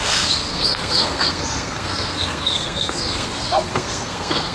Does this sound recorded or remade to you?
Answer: remade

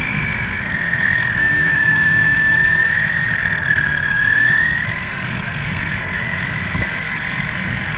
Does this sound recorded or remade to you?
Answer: remade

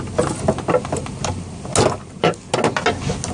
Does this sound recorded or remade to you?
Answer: recorded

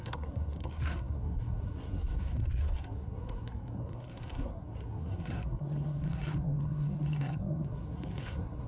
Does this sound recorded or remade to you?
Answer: remade